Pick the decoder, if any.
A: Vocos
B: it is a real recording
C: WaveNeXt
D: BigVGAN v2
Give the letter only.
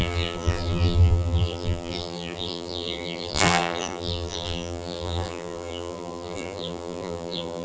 D